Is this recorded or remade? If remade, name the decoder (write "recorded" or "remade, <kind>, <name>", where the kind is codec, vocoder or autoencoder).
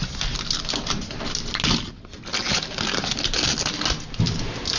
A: recorded